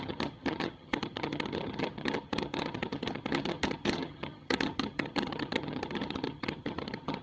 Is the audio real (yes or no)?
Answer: no